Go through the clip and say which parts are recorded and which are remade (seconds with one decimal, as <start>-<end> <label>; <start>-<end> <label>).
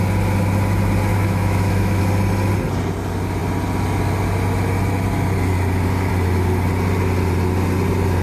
0.0-1.1 recorded; 1.1-2.0 remade; 2.0-8.2 recorded